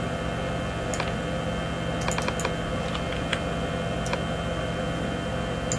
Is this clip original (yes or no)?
yes